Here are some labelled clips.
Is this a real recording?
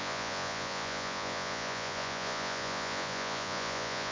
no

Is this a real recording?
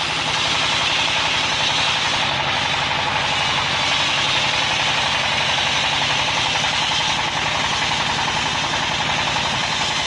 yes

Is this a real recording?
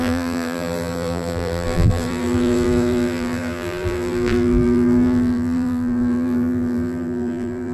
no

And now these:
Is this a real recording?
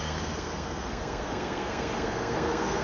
no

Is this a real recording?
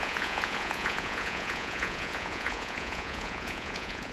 no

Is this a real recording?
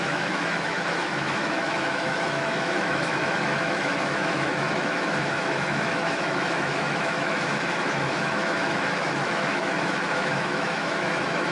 no